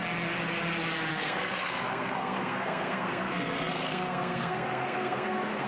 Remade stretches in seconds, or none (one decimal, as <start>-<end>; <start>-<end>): 1.1-5.7